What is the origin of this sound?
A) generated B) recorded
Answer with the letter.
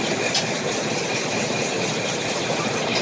B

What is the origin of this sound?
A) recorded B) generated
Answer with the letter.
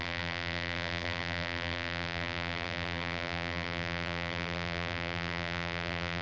B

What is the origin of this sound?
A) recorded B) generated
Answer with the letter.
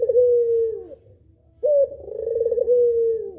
A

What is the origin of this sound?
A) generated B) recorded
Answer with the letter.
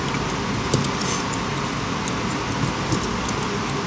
B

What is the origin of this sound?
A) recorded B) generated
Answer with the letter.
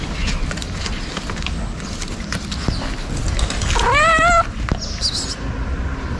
A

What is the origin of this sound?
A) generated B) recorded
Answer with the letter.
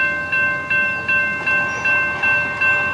B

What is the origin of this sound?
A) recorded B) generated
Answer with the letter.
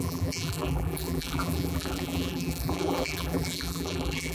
B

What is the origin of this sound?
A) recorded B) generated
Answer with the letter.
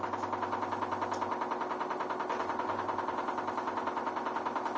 A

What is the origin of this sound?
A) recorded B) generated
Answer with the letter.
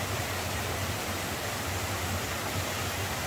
A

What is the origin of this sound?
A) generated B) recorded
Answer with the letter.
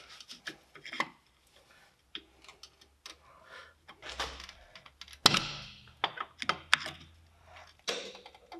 B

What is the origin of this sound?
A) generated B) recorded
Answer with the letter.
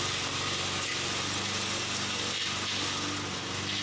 B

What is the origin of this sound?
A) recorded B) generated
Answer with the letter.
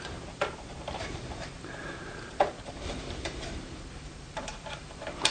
B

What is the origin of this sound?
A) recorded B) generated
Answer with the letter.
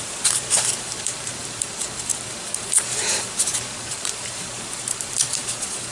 B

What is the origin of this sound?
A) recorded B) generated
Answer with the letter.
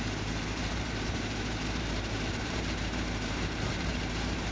B